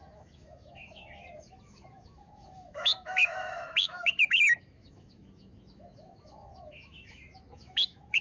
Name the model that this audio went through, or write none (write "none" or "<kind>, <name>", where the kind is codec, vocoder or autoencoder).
autoencoder, DAC-VAE